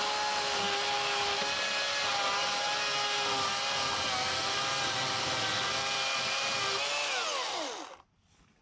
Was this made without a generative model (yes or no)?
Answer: yes